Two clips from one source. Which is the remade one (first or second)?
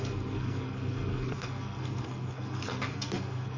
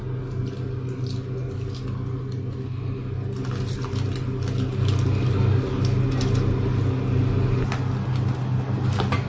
first